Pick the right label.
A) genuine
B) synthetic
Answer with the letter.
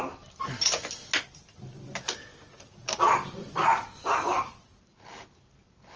A